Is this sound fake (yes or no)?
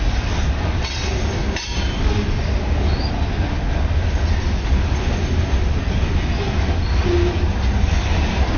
no